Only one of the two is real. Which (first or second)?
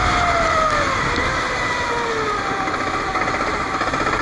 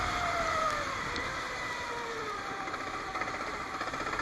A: first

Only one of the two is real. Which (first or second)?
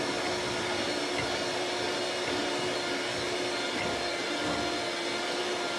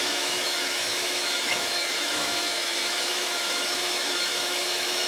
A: first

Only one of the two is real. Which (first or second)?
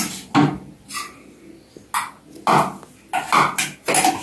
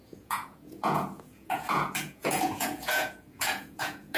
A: first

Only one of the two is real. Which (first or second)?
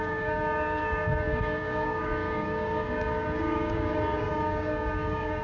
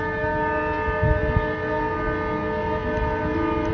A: second